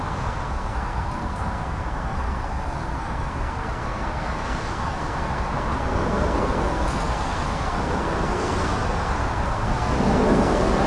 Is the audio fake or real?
fake